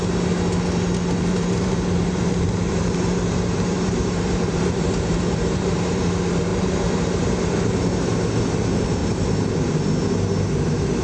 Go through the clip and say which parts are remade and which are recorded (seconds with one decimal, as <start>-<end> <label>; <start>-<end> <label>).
0.0-1.3 recorded; 1.3-6.0 remade; 6.0-6.5 recorded; 6.5-8.4 remade; 8.4-9.0 recorded; 9.0-9.5 remade; 9.5-11.0 recorded